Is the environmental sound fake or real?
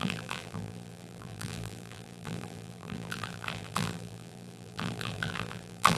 fake